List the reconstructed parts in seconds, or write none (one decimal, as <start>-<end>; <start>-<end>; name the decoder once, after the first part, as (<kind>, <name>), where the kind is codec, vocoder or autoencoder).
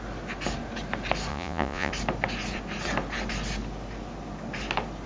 1.3-1.9 (vocoder, Vocos)